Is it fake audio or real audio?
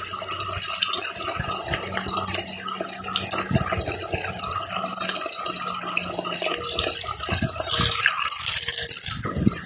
real